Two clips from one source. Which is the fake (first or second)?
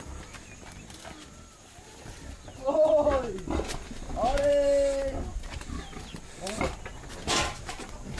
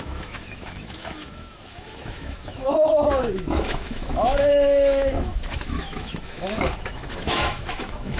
second